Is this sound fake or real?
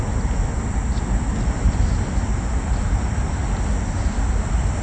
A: real